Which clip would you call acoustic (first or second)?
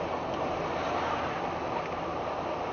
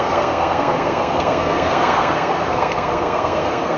first